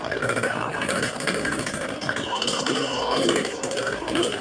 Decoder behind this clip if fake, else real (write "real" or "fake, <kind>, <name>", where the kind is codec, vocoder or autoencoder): fake, codec, SNAC